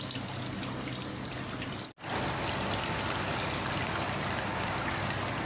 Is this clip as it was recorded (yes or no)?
yes